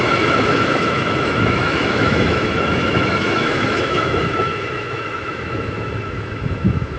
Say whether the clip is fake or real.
fake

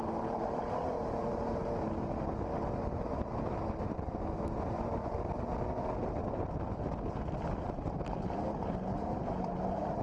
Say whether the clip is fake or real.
real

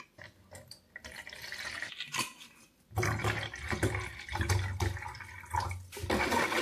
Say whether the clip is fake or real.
real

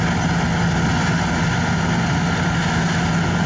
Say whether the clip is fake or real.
real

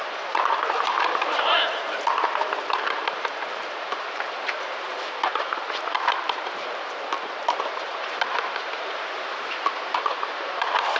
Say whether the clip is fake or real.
fake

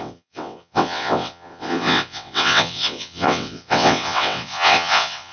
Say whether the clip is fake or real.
fake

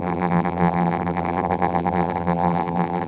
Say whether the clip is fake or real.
fake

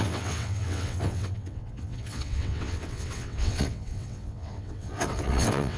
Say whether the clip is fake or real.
fake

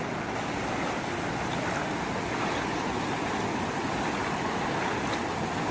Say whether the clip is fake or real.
real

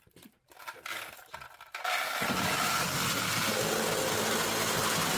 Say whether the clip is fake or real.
real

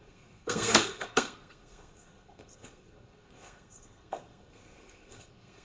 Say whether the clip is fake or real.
fake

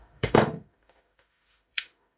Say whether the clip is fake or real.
fake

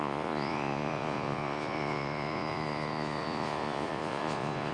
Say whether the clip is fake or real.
fake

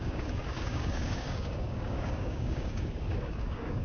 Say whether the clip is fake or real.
fake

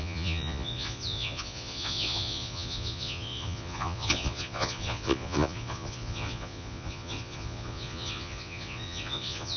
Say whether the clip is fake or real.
fake